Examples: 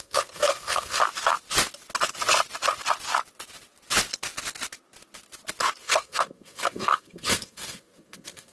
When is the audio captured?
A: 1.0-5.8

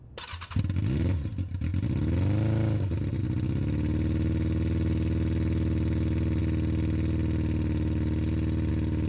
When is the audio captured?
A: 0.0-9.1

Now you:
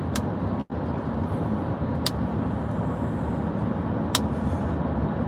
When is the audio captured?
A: 0.0-5.3